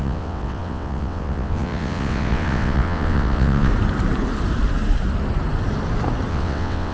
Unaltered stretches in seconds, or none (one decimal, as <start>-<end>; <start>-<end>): 3.7-6.3